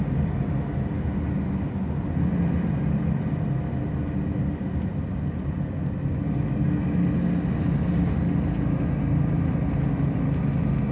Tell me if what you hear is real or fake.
real